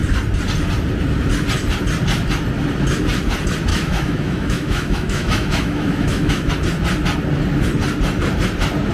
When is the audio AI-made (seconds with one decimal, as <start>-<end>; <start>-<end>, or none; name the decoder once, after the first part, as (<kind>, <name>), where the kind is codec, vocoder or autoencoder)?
3.7-6.5 (autoencoder, DAC-VAE)